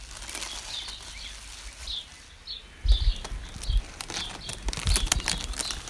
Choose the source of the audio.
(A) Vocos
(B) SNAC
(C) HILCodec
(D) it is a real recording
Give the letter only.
D